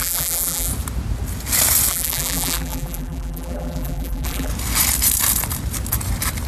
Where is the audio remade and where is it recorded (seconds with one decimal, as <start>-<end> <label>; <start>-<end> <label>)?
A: 0.0-0.7 remade; 0.7-1.9 recorded; 1.9-4.5 remade; 4.5-6.5 recorded